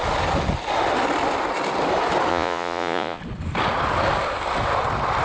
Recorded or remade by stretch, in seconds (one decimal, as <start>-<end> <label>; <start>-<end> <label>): 0.0-2.3 recorded; 2.3-3.2 remade; 3.2-5.2 recorded